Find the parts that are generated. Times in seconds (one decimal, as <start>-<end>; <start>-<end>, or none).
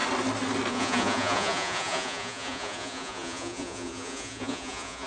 0.7-5.1